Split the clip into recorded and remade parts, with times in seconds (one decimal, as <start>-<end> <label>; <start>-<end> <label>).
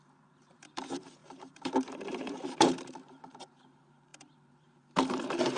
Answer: 0.0-5.6 remade